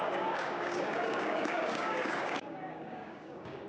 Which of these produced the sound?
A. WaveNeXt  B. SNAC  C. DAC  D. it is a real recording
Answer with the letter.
C